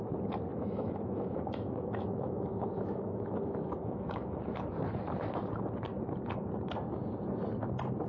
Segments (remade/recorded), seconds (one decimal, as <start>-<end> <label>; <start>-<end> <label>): 0.0-0.5 recorded; 0.5-4.4 remade; 4.4-8.1 recorded